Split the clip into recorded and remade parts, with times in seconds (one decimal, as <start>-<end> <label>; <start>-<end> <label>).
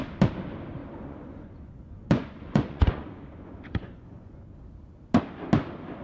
0.0-0.8 recorded; 0.8-4.4 remade; 4.4-6.0 recorded